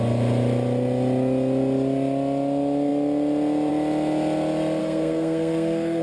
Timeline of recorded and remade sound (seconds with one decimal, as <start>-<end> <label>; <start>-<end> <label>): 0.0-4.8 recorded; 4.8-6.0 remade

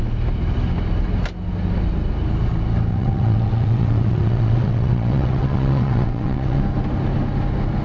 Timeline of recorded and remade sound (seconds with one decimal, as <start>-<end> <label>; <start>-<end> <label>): 0.0-2.9 recorded; 2.9-6.6 remade; 6.6-7.8 recorded

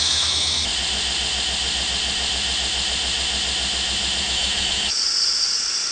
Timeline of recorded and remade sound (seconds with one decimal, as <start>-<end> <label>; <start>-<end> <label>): 0.0-0.7 remade; 0.7-4.2 recorded; 4.2-4.9 remade; 4.9-5.9 recorded

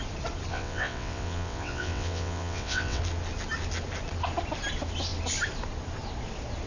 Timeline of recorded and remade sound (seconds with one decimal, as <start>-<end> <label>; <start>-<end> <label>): 0.0-0.5 recorded; 0.5-3.0 remade; 3.0-6.7 recorded